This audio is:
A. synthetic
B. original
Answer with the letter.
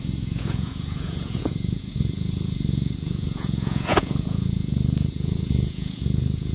A